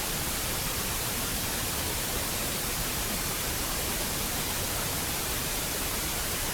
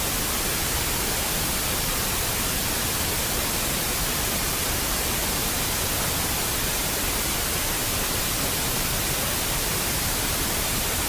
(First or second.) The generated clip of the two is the first